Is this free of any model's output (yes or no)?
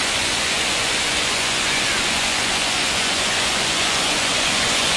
no